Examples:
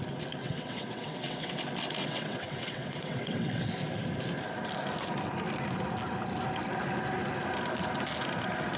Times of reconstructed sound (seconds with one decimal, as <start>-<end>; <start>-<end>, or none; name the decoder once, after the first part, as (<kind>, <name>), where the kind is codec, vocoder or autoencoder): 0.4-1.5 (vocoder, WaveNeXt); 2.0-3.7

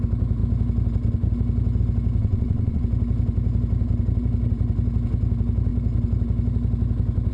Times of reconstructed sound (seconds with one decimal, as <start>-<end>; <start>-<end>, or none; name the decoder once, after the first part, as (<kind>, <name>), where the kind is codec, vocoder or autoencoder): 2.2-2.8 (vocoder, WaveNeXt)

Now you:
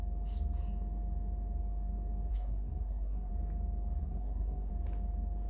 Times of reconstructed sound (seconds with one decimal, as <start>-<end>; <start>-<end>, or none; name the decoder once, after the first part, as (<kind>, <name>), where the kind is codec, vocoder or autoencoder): 2.3-3.3 (codec, SNAC); 4.0-4.7

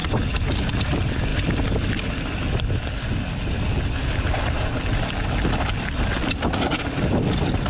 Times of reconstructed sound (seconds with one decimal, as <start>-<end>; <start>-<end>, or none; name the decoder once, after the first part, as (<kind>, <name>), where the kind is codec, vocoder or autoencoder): none